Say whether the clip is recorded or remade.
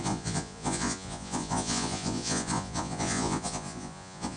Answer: remade